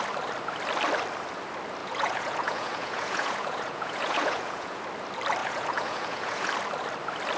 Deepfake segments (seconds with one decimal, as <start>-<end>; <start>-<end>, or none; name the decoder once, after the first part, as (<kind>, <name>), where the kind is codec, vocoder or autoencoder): 1.8-4.8 (vocoder, Vocos); 5.4-6.5